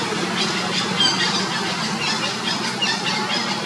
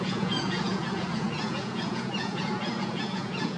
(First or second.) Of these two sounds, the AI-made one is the second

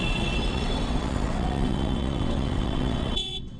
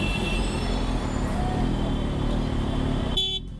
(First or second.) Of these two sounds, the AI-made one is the first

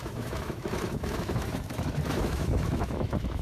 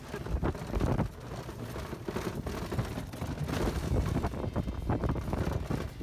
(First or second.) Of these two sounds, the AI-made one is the first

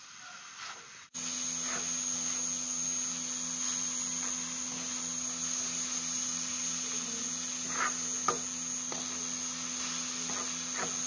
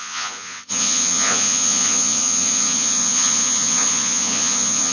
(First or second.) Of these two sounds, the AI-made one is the second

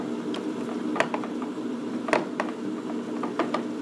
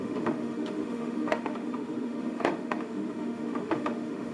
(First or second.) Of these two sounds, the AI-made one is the second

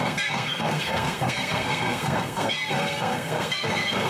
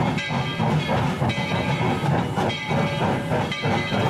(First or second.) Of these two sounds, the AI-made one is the first